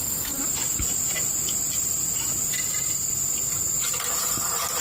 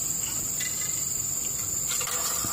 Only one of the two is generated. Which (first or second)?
second